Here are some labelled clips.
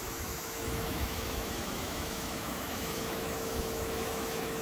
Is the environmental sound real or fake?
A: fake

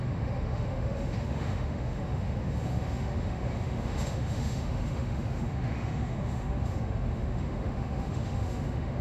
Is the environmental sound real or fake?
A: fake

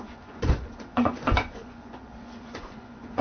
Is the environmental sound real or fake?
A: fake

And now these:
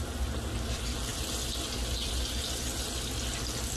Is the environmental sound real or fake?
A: real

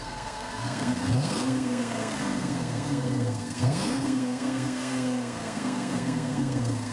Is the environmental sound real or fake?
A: fake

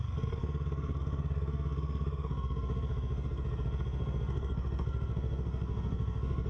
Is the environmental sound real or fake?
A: fake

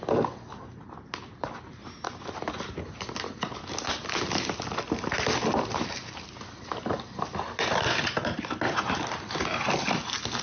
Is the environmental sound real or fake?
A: real